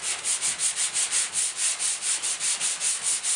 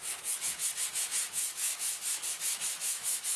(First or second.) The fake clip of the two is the second